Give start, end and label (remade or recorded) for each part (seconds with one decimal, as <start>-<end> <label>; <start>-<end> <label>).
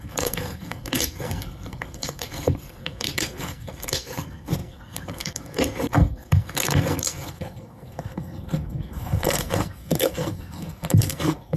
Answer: 0.0-11.6 remade